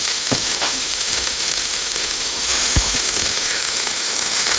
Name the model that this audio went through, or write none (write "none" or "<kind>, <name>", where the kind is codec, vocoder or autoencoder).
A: autoencoder, DAC-VAE